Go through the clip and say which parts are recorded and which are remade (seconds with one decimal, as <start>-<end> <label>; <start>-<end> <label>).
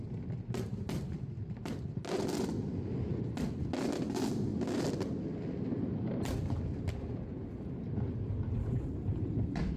0.0-9.8 recorded